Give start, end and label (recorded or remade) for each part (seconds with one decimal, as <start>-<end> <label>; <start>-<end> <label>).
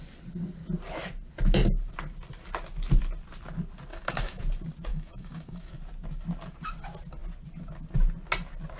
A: 0.0-3.9 recorded; 3.9-4.4 remade; 4.4-4.9 recorded; 4.9-5.7 remade; 5.7-8.8 recorded